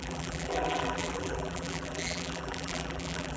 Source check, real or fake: fake